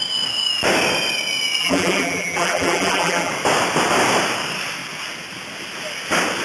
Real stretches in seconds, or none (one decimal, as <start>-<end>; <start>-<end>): 0.0-1.6; 3.3-6.4